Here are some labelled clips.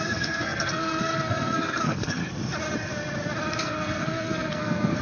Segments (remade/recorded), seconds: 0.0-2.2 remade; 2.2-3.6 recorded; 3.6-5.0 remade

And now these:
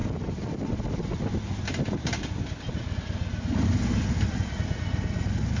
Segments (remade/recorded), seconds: 0.0-5.6 recorded